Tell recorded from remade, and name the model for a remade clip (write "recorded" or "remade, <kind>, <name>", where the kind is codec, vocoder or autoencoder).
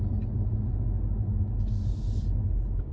recorded